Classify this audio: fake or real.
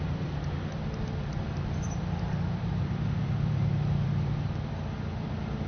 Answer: fake